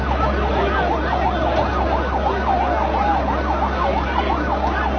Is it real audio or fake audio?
real